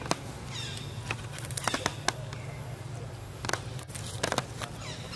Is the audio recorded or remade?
recorded